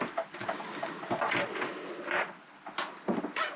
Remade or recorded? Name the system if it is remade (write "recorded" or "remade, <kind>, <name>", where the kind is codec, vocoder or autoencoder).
recorded